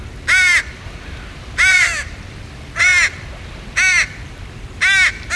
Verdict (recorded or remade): remade